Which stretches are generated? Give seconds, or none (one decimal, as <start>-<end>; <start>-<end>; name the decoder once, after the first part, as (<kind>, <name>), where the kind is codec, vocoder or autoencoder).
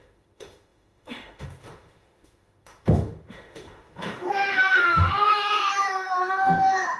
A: 0.0-7.0 (autoencoder, DAC-VAE)